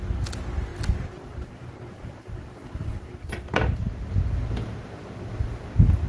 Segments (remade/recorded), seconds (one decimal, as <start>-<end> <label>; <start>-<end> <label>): 0.0-0.7 recorded; 0.7-3.3 remade; 3.3-6.1 recorded